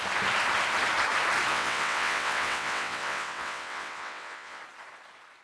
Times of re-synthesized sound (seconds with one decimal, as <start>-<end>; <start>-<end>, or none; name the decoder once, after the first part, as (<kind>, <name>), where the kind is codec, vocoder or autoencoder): 1.5-4.6 (vocoder, WaveNeXt)